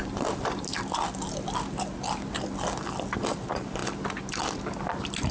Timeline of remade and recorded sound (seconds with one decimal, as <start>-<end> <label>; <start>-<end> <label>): 0.0-5.3 recorded